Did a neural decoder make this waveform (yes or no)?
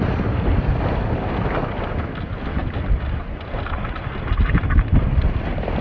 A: no